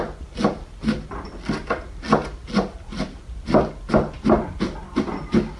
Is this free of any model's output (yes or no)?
yes